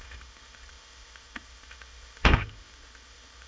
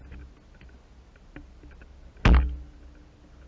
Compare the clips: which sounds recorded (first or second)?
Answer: second